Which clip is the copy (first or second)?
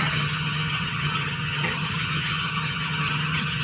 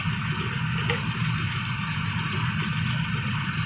first